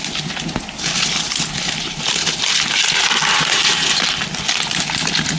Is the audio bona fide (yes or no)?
yes